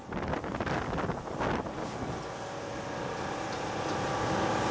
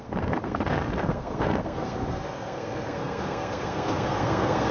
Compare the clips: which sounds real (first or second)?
first